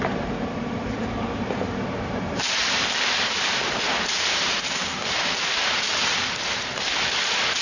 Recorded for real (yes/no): no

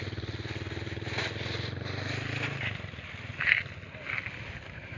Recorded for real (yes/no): yes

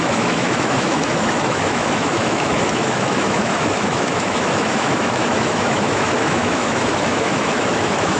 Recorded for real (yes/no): no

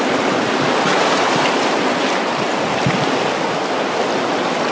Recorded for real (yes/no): yes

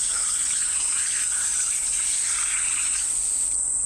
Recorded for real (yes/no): yes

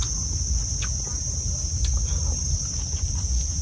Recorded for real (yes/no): yes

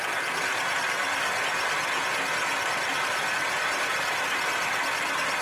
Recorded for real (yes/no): yes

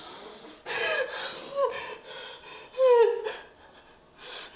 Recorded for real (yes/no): yes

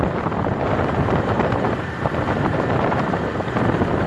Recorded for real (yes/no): no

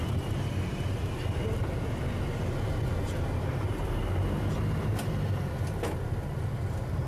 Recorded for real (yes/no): yes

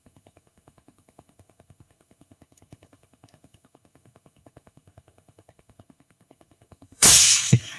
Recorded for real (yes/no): no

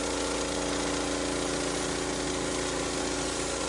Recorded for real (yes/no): yes